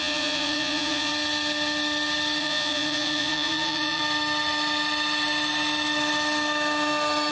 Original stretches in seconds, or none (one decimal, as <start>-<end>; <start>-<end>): 1.1-2.4; 4.0-7.3